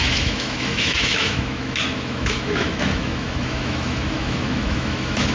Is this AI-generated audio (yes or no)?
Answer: yes